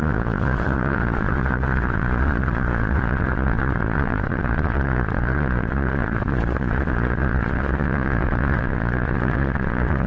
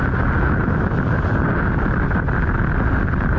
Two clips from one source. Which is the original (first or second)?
second